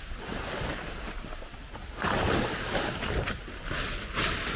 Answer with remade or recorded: recorded